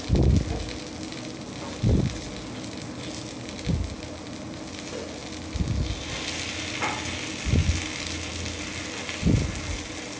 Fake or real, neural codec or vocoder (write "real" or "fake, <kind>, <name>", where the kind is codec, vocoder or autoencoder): real